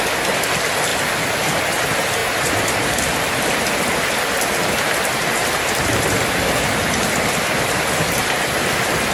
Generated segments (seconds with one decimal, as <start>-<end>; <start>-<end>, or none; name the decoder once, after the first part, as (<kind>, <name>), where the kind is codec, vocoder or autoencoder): 0.9-1.6 (vocoder, BigVGAN v2); 2.2-3.9; 5.4-8.2